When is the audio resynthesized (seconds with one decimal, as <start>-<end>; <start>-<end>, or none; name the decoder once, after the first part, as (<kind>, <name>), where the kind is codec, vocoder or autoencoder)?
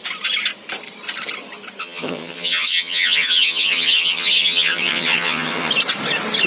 1.8-5.7 (vocoder, HiFi-GAN)